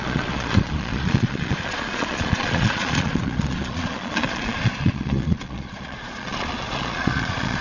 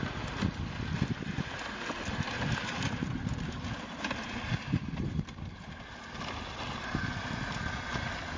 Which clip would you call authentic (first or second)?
second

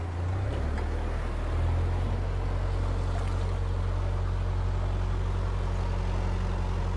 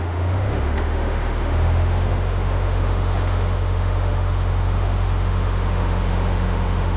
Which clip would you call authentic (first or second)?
first